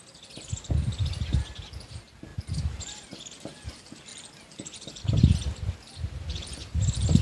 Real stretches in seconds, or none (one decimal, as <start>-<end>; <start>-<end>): 0.0-4.1; 5.0-7.2